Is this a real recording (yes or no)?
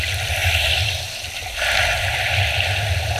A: yes